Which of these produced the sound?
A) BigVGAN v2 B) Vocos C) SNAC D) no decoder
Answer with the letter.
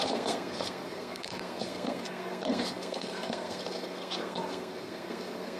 C